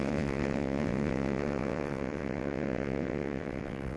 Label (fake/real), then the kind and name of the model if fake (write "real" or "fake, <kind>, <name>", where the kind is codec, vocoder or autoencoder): fake, vocoder, WaveNeXt